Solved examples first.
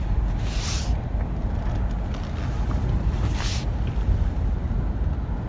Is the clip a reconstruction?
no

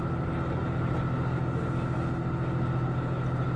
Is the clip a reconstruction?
no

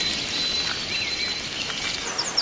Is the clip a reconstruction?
no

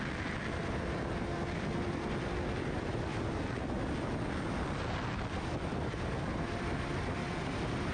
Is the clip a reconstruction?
no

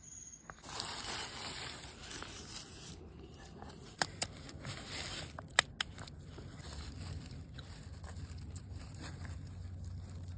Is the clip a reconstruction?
no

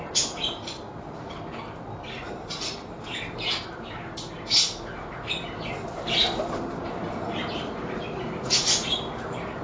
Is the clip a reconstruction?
no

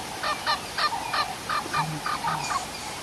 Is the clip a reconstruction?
no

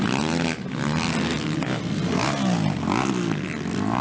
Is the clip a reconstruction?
no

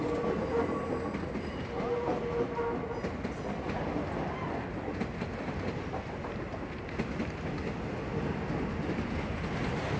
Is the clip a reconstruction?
no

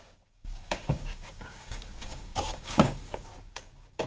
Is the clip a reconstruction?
yes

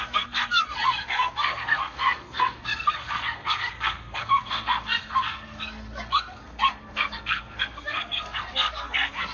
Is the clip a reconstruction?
yes